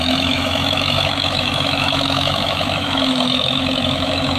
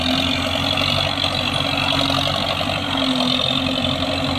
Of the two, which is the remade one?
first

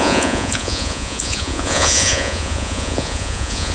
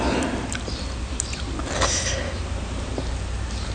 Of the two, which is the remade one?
first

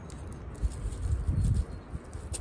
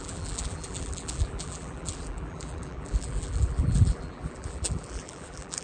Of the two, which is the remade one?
second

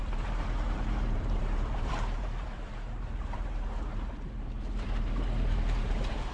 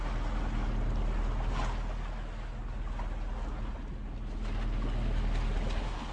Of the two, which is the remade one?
first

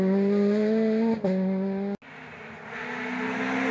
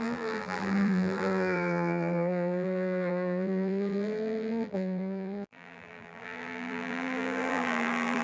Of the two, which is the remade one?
second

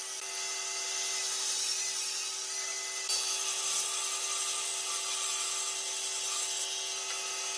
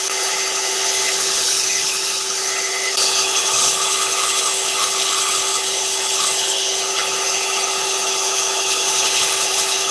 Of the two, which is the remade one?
second